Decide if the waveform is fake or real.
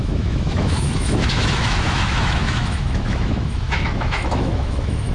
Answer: fake